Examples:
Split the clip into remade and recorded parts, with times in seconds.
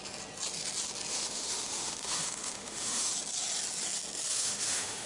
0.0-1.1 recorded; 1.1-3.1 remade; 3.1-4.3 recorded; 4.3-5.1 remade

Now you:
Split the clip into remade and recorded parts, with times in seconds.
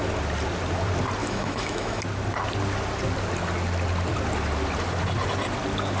0.0-1.2 recorded; 1.2-2.0 remade; 2.0-6.0 recorded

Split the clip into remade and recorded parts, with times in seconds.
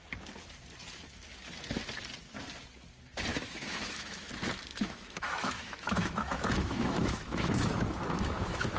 0.0-3.3 recorded; 3.3-4.3 remade; 4.3-4.7 recorded; 4.7-8.8 remade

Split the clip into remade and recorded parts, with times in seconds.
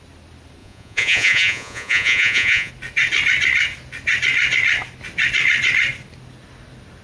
0.0-0.6 recorded; 0.6-2.7 remade; 2.7-7.0 recorded